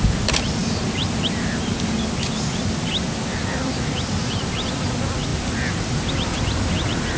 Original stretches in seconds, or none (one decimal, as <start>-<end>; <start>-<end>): 0.0-7.2